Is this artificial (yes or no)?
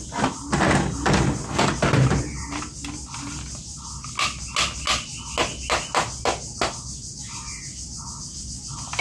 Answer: no